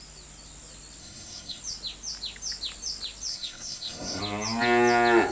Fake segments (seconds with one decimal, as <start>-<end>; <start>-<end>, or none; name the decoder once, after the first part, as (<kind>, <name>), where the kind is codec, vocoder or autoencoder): 1.0-1.6 (codec, SNAC); 3.3-4.2